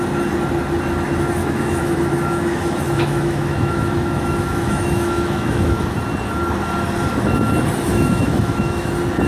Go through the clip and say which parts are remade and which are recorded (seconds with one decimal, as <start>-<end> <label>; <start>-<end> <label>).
0.0-1.4 recorded; 1.4-5.8 remade; 5.8-7.9 recorded; 7.9-8.9 remade; 8.9-9.3 recorded